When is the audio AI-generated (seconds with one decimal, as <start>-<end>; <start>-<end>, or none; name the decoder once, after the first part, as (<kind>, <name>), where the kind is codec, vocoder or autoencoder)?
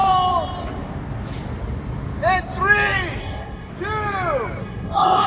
3.2-3.7 (codec, SNAC); 4.6-5.3